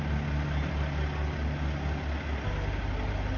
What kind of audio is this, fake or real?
real